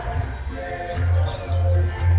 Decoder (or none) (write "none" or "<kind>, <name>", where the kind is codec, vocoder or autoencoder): none